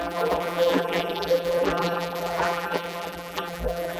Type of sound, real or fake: fake